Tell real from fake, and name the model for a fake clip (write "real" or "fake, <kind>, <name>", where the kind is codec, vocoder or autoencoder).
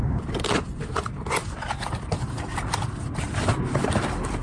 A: fake, vocoder, BigVGAN v2